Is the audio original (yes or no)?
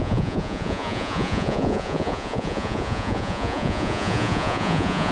no